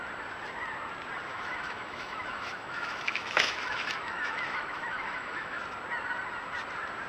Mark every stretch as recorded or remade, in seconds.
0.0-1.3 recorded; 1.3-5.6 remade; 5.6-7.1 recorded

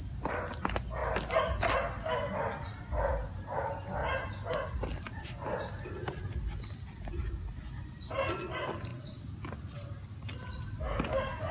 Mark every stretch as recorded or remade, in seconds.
0.0-11.5 recorded

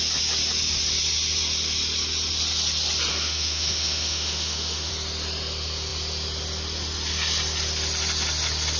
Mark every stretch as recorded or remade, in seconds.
0.0-3.1 recorded; 3.1-4.9 remade; 4.9-8.8 recorded

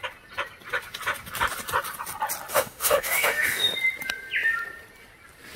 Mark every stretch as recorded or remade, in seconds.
0.0-2.5 recorded; 2.5-3.7 remade; 3.7-5.6 recorded

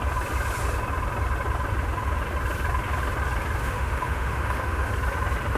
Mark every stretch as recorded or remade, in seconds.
0.0-3.6 recorded; 3.6-4.9 remade; 4.9-5.6 recorded